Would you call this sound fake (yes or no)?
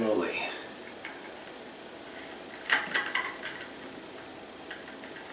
no